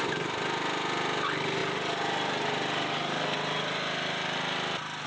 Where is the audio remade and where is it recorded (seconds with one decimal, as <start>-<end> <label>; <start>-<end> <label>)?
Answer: 0.0-5.1 recorded